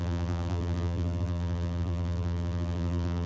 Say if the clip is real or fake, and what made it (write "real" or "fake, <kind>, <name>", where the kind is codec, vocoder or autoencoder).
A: fake, vocoder, BigVGAN v2